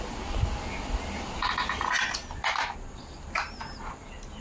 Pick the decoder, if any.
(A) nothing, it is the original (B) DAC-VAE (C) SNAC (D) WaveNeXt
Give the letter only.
A